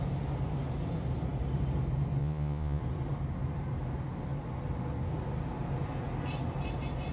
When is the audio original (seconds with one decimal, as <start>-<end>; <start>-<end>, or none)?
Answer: 0.0-2.2; 2.8-7.1